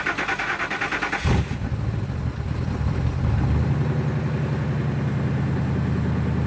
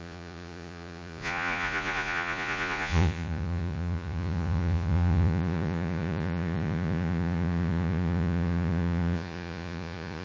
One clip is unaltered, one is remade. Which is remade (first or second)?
second